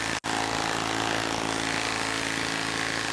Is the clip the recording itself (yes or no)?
yes